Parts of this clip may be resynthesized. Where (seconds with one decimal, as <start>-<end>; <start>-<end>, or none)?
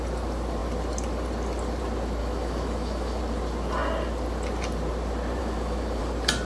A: 2.2-3.2; 5.4-6.0